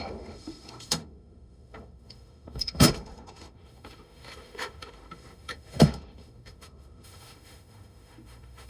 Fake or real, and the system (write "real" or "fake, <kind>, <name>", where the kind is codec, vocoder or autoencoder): fake, autoencoder, DAC-VAE